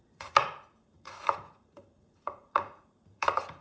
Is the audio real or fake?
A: fake